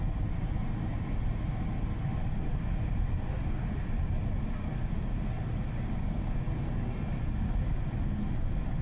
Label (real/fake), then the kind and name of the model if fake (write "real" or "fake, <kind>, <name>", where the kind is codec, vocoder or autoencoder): real